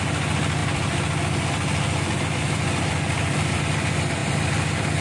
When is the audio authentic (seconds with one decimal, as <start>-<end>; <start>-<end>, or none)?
0.0-0.6; 3.6-4.2